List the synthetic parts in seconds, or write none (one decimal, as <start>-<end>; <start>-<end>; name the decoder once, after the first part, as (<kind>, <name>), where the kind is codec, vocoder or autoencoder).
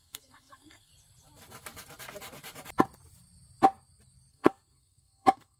0.0-0.9 (codec, SNAC); 4.3-5.6